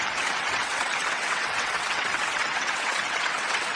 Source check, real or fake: fake